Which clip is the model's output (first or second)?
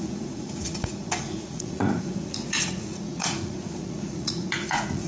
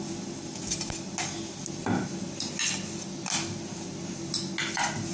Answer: first